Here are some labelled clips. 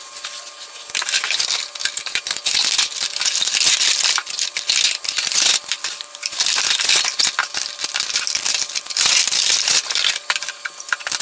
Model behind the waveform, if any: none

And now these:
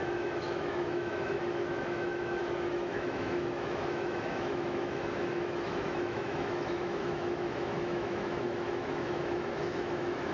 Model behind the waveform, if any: autoencoder, DAC-VAE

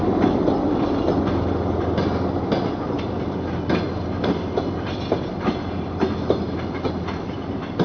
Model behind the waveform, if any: none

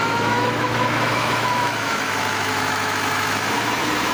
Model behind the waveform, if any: autoencoder, DAC-VAE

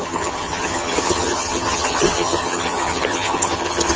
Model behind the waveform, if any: vocoder, HiFi-GAN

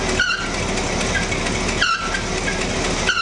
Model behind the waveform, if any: none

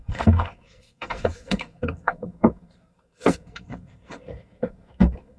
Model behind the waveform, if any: codec, SNAC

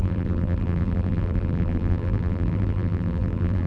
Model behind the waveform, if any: vocoder, BigVGAN v2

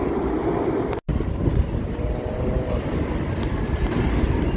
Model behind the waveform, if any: none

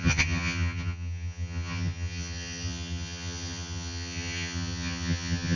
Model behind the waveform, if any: vocoder, HiFi-GAN